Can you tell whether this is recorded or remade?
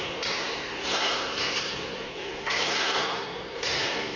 remade